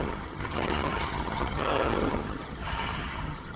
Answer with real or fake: fake